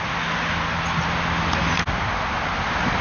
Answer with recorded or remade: recorded